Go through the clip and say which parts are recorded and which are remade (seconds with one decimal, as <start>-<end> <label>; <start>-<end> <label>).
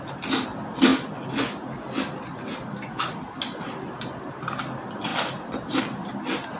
0.0-6.6 recorded